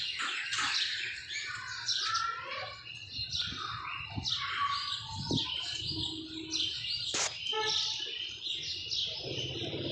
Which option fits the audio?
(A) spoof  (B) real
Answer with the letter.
B